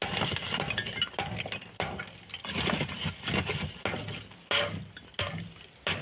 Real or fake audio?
real